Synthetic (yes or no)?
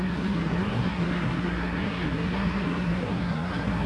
yes